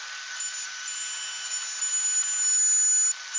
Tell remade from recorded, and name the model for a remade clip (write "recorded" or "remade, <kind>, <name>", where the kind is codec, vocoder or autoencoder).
recorded